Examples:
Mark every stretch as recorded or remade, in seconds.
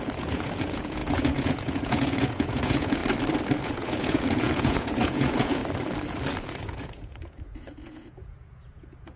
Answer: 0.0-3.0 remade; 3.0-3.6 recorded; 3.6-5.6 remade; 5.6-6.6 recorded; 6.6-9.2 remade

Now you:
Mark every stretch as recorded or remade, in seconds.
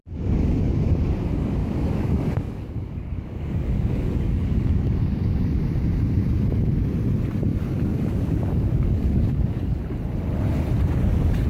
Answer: 0.0-0.8 remade; 0.8-1.6 recorded; 1.6-5.6 remade; 5.6-7.5 recorded; 7.5-9.8 remade; 9.8-11.5 recorded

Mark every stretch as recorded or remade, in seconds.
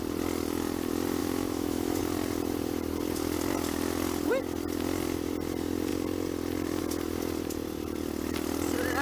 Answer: 0.0-1.2 recorded; 1.2-2.0 remade; 2.0-9.0 recorded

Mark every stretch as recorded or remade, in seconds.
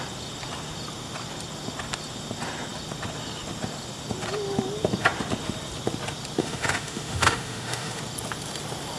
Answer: 0.0-6.4 recorded; 6.4-8.0 remade; 8.0-9.0 recorded